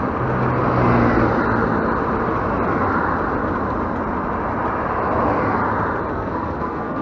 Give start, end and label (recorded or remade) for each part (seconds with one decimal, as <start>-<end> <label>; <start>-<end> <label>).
0.0-6.1 recorded; 6.1-7.0 remade